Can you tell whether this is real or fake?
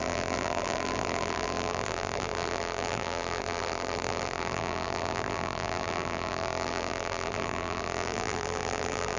fake